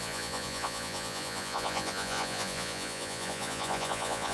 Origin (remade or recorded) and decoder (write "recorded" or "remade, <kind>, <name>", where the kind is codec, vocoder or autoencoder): remade, vocoder, Vocos